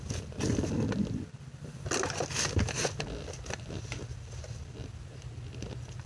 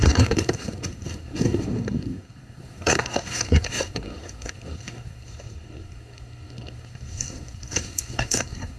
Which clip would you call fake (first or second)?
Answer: second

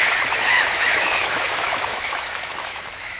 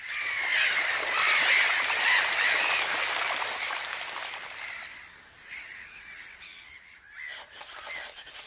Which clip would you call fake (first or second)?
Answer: first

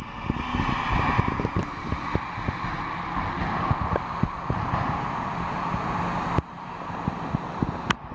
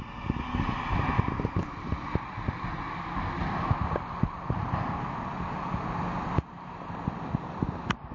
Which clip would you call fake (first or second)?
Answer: second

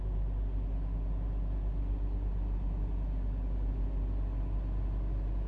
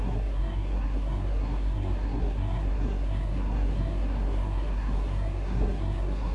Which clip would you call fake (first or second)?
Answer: second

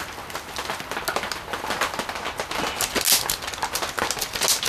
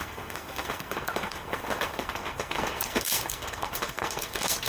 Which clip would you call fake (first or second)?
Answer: second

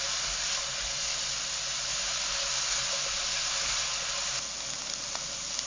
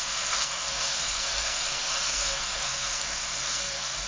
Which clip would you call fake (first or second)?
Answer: second